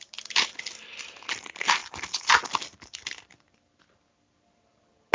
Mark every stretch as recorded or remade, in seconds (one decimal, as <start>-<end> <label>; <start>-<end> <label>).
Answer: 0.0-5.1 recorded